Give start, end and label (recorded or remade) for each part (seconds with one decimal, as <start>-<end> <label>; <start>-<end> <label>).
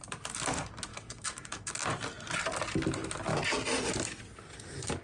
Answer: 0.0-0.9 recorded; 0.9-1.7 remade; 1.7-5.0 recorded